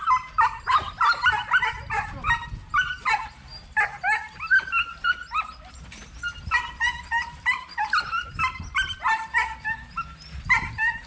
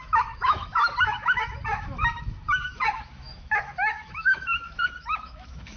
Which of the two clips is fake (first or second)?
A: second